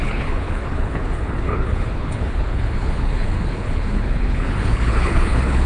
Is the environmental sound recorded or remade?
remade